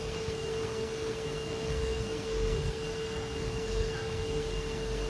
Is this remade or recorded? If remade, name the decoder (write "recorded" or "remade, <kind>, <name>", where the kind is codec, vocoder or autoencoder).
remade, codec, SNAC